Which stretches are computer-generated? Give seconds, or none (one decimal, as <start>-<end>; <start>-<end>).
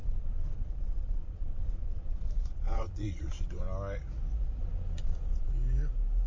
0.0-3.6; 4.6-5.5